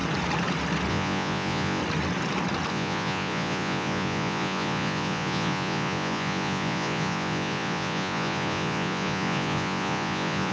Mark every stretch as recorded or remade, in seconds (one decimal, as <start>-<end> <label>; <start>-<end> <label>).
0.0-0.9 recorded; 0.9-1.8 remade; 1.8-2.7 recorded; 2.7-10.5 remade

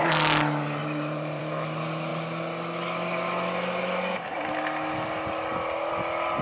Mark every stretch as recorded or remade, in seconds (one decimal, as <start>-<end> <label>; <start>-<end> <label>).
0.0-0.8 recorded; 0.8-1.4 remade; 1.4-6.4 recorded

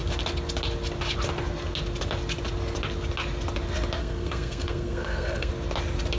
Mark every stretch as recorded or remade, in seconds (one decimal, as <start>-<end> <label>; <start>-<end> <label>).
0.0-4.0 recorded; 4.0-5.5 remade; 5.5-6.2 recorded

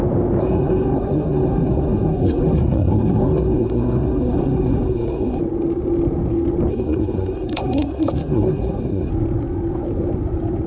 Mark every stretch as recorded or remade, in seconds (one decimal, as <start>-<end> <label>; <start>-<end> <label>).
0.0-0.4 recorded; 0.4-5.4 remade; 5.4-6.7 recorded; 6.7-9.1 remade; 9.1-10.7 recorded

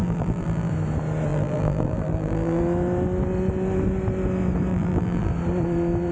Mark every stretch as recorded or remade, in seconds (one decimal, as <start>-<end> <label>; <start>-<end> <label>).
0.0-0.7 remade; 0.7-1.3 recorded; 1.3-2.6 remade; 2.6-4.7 recorded; 4.7-5.3 remade; 5.3-6.1 recorded

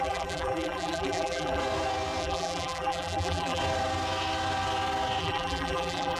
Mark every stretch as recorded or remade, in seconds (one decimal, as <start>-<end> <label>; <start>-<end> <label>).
0.0-1.6 remade; 1.6-2.2 recorded; 2.2-3.6 remade; 3.6-5.2 recorded; 5.2-6.2 remade

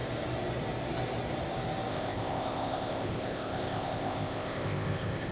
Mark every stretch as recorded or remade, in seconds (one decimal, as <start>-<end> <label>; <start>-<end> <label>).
0.0-1.9 recorded; 1.9-5.3 remade